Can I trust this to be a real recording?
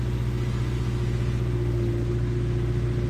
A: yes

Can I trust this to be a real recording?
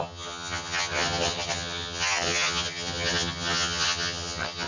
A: no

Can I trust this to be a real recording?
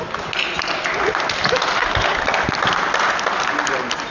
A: yes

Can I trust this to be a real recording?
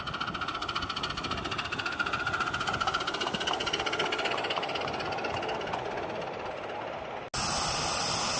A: yes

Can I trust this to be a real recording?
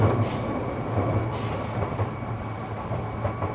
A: yes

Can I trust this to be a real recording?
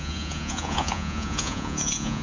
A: no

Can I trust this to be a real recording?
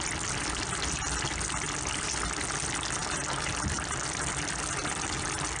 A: yes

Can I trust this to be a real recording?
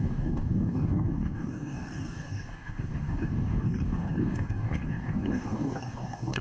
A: no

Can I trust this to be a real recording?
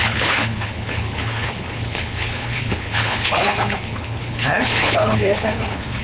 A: no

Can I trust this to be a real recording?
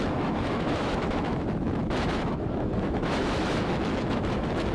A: no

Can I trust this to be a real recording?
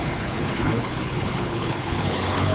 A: no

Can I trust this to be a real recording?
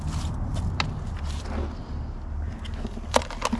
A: yes